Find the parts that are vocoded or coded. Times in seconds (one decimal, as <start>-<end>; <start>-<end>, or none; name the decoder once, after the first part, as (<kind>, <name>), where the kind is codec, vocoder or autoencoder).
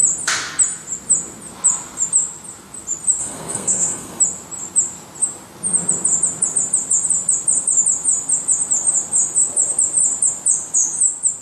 3.2-4.2 (codec, SNAC)